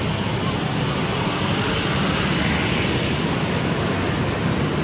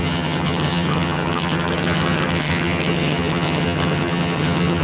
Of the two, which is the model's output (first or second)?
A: second